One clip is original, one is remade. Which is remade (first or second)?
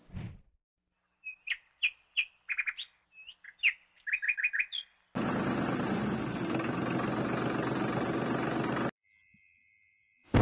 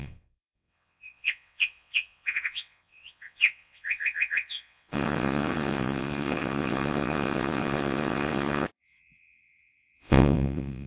second